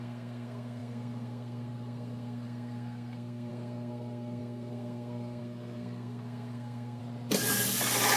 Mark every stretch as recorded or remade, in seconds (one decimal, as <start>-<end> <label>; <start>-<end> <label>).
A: 0.0-7.0 remade; 7.0-8.2 recorded